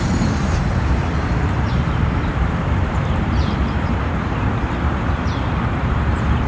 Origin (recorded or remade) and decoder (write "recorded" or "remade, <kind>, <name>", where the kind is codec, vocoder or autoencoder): remade, vocoder, BigVGAN v2